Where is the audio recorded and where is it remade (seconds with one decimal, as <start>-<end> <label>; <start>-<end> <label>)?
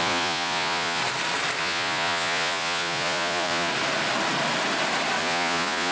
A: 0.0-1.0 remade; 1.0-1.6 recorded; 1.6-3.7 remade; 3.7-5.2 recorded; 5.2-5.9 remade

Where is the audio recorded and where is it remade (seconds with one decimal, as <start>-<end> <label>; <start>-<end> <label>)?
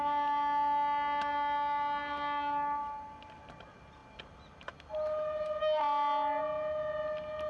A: 0.0-7.5 recorded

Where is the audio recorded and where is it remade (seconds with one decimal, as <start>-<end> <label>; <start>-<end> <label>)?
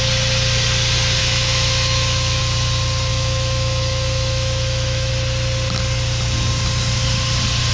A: 0.0-1.2 recorded; 1.2-2.4 remade; 2.4-3.1 recorded; 3.1-5.1 remade; 5.1-7.7 recorded